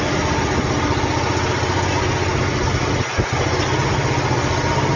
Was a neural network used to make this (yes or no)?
no